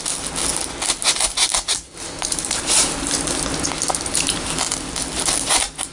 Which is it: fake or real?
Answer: real